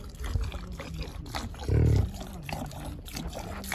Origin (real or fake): real